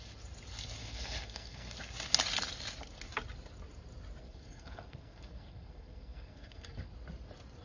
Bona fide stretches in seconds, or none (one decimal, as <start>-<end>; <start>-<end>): 0.0-0.8; 1.7-4.2; 6.9-7.6